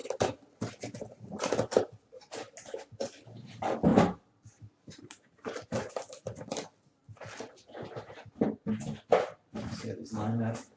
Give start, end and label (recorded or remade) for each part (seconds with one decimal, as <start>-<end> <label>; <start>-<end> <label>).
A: 0.0-1.5 remade; 1.5-3.9 recorded; 3.9-5.9 remade; 5.9-10.8 recorded